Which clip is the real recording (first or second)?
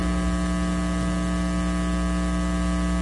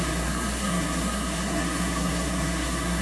first